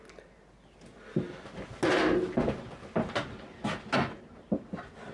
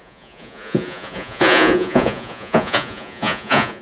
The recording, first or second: first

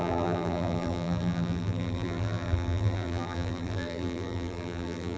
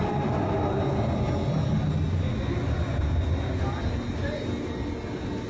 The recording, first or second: second